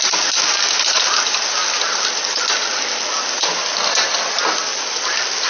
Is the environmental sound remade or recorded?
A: recorded